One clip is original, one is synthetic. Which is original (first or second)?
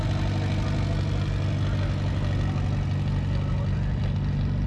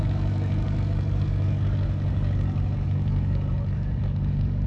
first